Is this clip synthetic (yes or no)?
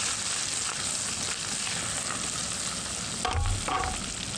no